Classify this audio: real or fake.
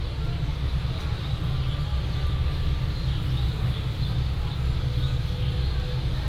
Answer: real